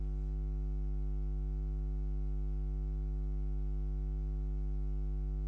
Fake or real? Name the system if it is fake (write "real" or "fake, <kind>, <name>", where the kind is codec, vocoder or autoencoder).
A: real